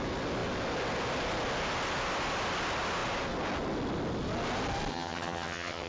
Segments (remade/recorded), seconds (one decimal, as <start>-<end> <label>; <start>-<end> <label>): 0.0-4.9 recorded; 4.9-5.9 remade